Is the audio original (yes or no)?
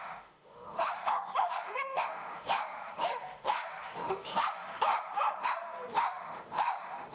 no